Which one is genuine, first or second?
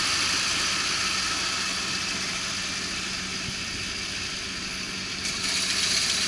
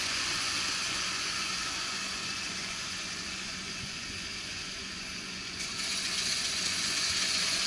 first